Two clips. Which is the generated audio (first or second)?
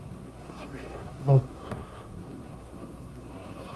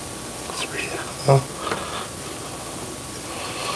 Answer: first